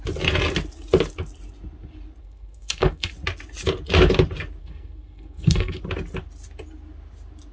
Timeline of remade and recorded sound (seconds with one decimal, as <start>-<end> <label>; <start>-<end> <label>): 0.0-2.2 recorded; 2.2-3.1 remade; 3.1-4.6 recorded; 4.6-5.8 remade; 5.8-7.5 recorded